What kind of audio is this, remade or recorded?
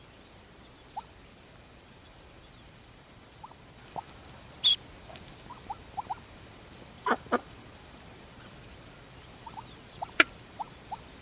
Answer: remade